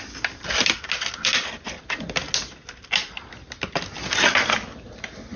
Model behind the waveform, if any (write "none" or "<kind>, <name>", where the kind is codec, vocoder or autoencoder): none